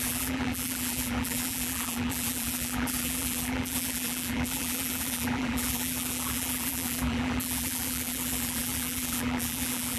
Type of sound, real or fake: fake